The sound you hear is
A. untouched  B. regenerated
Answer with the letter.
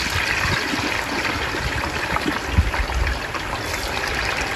A